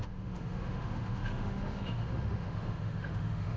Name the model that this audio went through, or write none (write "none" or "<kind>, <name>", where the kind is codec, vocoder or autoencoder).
autoencoder, DAC-VAE